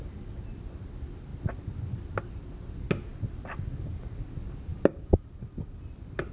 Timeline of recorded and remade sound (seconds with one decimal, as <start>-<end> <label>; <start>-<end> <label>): 0.0-3.1 recorded; 3.1-3.8 remade; 3.8-6.3 recorded